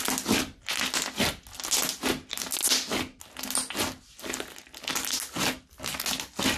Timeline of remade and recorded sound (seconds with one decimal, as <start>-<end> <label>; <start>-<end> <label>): 0.0-6.6 recorded